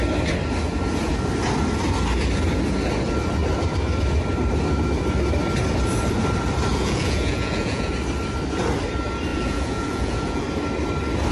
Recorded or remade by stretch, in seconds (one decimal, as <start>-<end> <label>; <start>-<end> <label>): 0.0-6.7 recorded; 6.7-7.9 remade; 7.9-9.3 recorded; 9.3-10.4 remade; 10.4-11.3 recorded